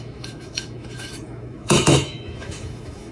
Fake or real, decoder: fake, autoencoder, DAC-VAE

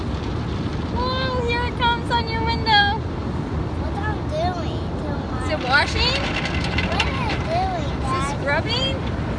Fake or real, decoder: real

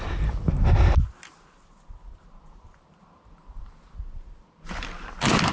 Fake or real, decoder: real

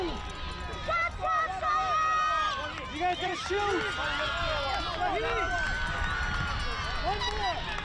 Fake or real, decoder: real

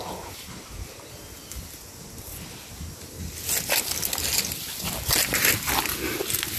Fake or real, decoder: real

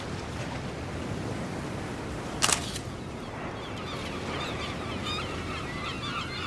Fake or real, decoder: real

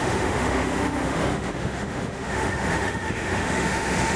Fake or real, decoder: fake, autoencoder, DAC-VAE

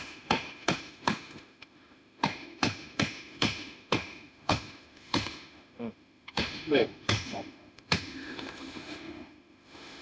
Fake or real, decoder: fake, autoencoder, DAC-VAE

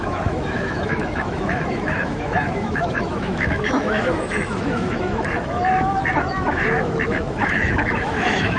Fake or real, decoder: fake, autoencoder, DAC-VAE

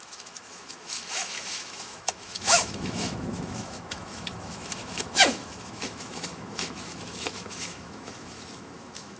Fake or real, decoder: fake, autoencoder, DAC-VAE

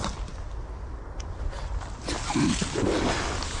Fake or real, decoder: real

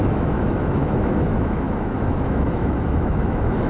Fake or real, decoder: fake, autoencoder, DAC-VAE